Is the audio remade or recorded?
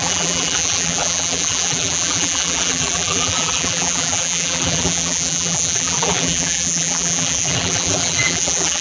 remade